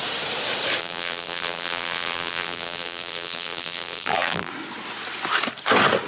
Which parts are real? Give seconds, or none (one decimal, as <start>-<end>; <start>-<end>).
0.0-0.8; 4.5-6.1